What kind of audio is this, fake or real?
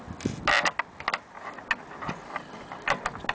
real